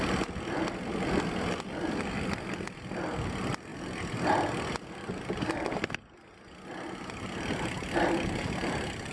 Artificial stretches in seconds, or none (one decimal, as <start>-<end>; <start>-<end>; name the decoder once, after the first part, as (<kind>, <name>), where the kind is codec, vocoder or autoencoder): none

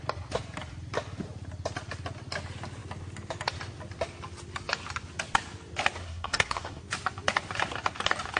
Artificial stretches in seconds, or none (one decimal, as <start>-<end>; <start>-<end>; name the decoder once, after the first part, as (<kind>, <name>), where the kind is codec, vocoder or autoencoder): 6.0-6.8 (codec, SNAC)

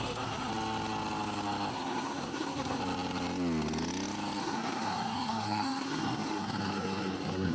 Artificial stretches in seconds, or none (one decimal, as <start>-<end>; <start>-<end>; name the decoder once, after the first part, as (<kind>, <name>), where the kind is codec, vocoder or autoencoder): 0.0-0.5 (codec, SNAC); 1.7-2.8; 4.4-7.5